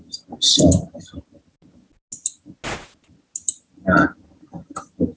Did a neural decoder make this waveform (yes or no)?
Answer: no